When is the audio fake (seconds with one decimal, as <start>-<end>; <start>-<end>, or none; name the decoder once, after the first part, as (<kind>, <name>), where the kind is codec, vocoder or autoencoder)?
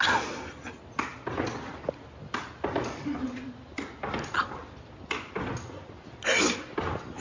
none